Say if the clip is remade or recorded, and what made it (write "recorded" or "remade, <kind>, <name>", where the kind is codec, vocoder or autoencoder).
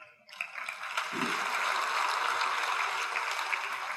recorded